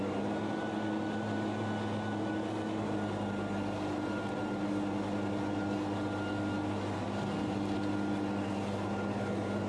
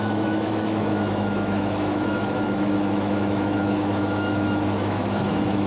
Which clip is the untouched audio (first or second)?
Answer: first